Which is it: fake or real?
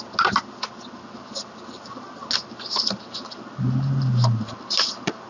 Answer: real